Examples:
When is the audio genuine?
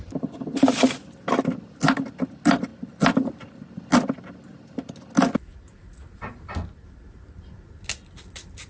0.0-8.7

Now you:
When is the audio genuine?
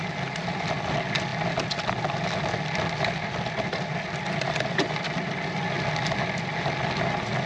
0.0-7.5